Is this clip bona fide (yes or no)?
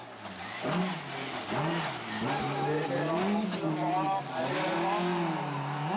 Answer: yes